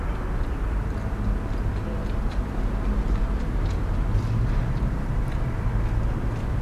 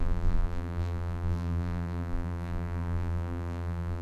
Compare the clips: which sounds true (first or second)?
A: first